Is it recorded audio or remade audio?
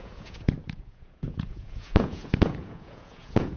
remade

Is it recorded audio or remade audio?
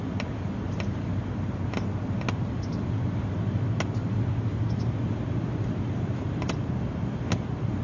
recorded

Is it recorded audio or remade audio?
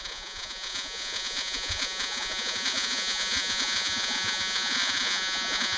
remade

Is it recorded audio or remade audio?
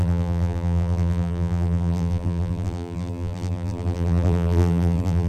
remade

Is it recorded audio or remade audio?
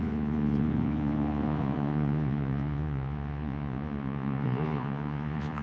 remade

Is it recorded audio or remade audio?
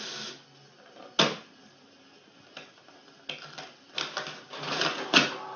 recorded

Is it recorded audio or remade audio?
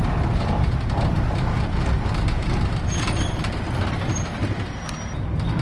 recorded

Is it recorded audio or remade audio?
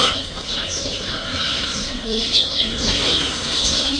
remade